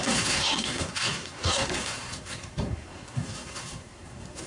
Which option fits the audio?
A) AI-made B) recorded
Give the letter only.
A